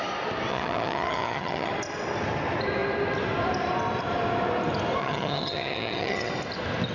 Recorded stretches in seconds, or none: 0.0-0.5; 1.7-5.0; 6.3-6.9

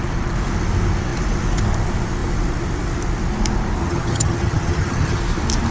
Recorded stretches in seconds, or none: 0.0-3.8; 5.2-5.7

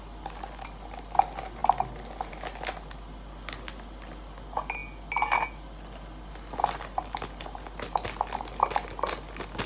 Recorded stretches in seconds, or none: 0.0-9.7

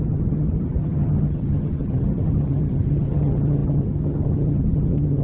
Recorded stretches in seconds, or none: none

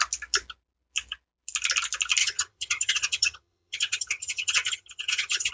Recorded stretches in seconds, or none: 0.0-2.2

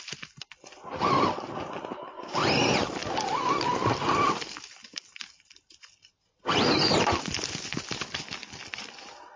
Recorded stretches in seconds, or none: 0.0-9.4